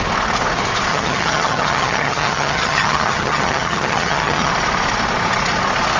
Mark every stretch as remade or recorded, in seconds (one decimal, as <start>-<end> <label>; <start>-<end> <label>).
0.0-0.9 recorded; 0.9-4.5 remade; 4.5-6.0 recorded

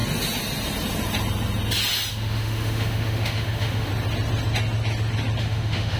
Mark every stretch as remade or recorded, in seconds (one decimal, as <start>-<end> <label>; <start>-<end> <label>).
0.0-2.1 recorded; 2.1-3.9 remade; 3.9-5.4 recorded; 5.4-6.0 remade

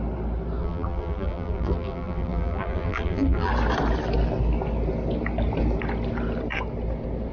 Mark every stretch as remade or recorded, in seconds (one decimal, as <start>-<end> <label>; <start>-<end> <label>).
0.0-0.6 recorded; 0.6-3.5 remade; 3.5-7.3 recorded

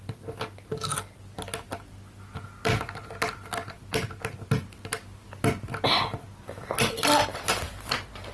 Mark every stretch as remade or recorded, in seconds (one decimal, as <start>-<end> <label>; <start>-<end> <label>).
0.0-8.3 recorded

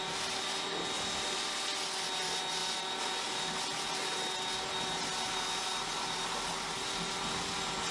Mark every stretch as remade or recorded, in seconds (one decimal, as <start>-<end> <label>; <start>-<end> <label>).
0.0-7.9 recorded

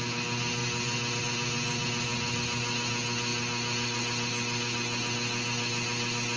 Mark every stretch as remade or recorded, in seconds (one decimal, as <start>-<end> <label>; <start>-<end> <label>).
0.0-6.4 recorded

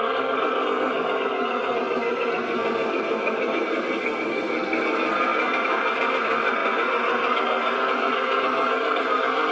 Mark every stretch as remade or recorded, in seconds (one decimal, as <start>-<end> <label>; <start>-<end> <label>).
0.0-9.5 remade